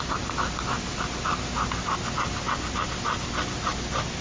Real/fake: real